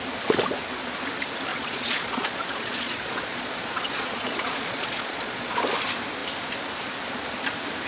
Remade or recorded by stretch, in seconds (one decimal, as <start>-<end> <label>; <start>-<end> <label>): 0.0-1.5 recorded; 1.5-5.6 remade; 5.6-7.9 recorded